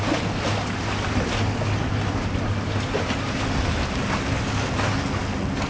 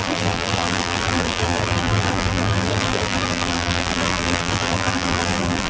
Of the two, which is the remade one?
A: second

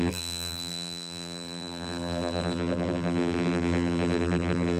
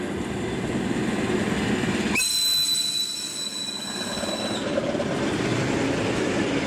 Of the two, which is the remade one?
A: first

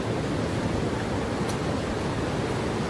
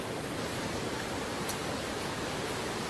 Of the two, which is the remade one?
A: second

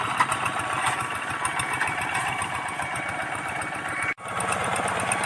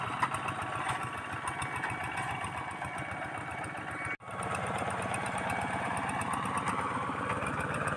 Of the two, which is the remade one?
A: first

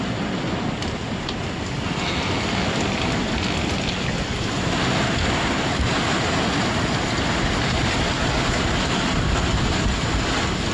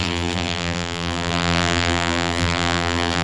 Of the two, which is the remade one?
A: second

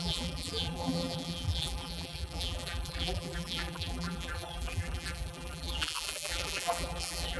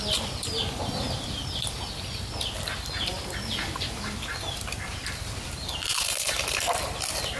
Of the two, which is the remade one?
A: first